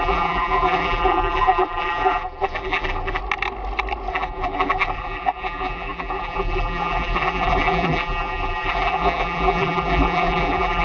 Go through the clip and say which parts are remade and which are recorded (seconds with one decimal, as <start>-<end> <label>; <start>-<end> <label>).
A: 0.0-3.2 remade; 3.2-4.1 recorded; 4.1-10.8 remade